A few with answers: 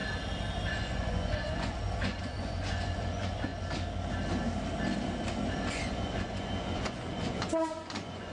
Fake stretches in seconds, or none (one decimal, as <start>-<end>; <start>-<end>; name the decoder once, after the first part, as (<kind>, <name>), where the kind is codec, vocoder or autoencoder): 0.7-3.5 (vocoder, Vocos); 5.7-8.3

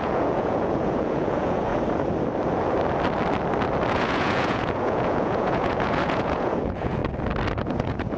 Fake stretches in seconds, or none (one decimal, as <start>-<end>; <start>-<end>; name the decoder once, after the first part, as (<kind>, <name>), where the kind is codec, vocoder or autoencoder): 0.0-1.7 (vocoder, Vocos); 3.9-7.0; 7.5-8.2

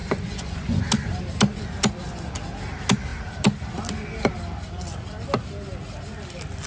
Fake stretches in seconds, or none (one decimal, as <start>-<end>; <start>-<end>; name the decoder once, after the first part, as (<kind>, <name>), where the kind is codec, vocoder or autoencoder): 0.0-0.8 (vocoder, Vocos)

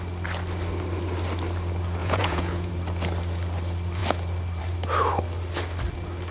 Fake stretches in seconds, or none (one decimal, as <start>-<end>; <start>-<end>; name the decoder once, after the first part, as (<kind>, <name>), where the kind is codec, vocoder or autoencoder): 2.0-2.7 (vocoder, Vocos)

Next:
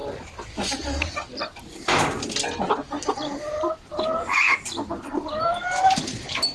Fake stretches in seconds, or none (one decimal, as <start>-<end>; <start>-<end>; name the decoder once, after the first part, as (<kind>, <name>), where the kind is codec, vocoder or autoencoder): none

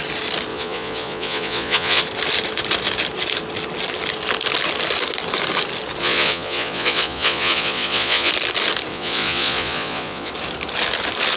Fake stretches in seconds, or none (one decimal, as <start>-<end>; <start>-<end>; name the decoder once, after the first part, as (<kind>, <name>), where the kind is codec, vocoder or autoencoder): 0.5-2.0 (vocoder, Vocos); 6.0-8.3; 8.9-10.3